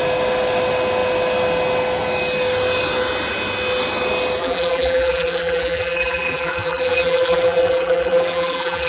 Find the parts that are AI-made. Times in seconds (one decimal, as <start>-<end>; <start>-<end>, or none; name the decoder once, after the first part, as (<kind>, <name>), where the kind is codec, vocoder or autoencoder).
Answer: 4.4-8.9 (vocoder, BigVGAN v2)